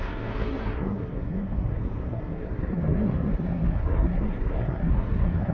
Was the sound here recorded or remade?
remade